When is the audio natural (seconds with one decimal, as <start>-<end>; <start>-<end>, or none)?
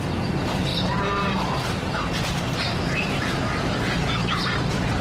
0.0-0.7; 3.4-4.2